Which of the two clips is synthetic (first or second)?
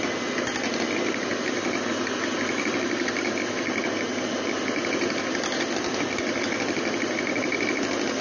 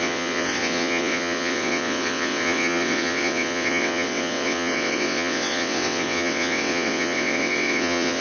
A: second